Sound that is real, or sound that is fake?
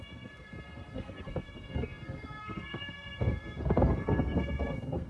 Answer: fake